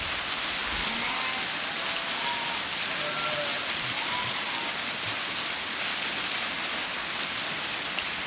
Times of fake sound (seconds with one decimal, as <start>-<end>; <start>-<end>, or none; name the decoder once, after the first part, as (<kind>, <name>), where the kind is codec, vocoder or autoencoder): none